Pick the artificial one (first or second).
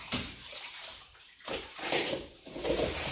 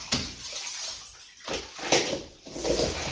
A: first